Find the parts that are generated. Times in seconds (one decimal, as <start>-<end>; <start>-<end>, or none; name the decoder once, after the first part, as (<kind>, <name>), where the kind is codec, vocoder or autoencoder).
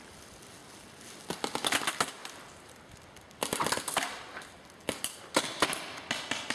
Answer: none